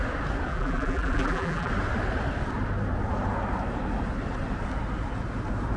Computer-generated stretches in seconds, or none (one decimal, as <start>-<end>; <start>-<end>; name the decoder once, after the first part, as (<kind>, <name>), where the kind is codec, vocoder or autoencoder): 0.5-1.7 (vocoder, BigVGAN v2)